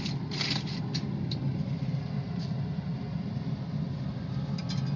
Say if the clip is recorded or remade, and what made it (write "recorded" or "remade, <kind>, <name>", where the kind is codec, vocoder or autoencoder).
recorded